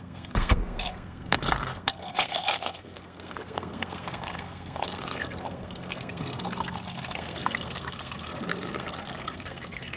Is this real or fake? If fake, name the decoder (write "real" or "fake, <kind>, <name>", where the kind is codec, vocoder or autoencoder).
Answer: fake, codec, SNAC